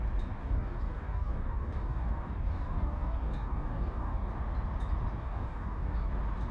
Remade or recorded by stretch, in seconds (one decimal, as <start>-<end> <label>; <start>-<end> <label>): 0.0-0.4 recorded; 0.4-4.3 remade; 4.3-5.2 recorded; 5.2-6.1 remade; 6.1-6.5 recorded